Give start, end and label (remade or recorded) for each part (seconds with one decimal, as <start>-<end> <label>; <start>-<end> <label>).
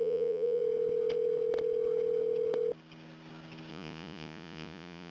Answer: 0.0-0.6 remade; 0.6-3.7 recorded; 3.7-5.1 remade